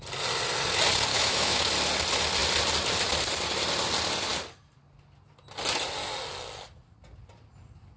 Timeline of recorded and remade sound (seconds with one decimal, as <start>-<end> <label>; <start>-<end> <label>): 0.0-1.1 recorded; 1.1-1.7 remade; 1.7-8.0 recorded